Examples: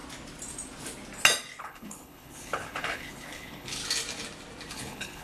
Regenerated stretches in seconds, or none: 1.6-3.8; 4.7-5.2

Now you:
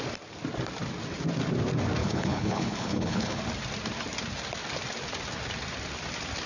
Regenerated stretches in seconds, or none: 2.0-3.4

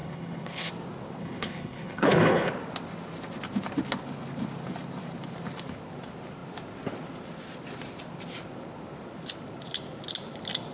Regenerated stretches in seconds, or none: 0.0-0.7; 1.2-2.5

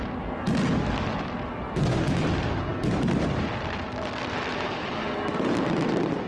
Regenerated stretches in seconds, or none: none